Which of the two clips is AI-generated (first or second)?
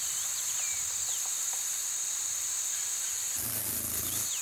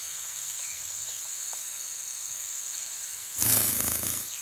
second